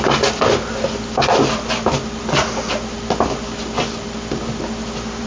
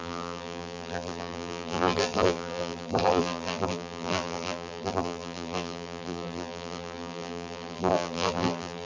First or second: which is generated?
second